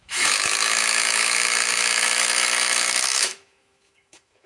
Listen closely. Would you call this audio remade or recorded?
remade